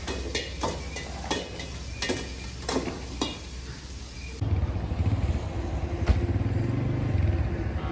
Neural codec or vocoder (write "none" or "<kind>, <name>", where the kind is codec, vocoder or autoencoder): none